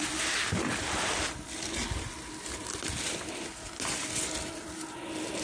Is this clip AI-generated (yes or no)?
no